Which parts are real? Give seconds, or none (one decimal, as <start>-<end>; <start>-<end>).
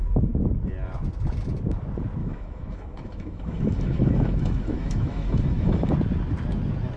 0.0-2.2; 5.9-7.0